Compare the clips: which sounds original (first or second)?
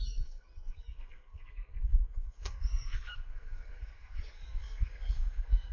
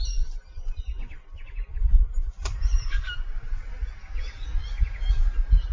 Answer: second